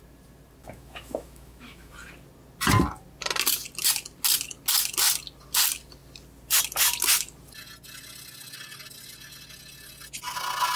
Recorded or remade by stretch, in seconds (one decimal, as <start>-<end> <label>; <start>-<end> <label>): 0.0-0.6 recorded; 0.6-1.9 remade; 1.9-10.8 recorded